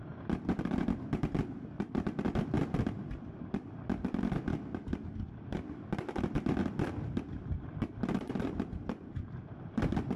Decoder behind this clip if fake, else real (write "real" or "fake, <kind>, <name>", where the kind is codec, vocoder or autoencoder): fake, vocoder, BigVGAN v2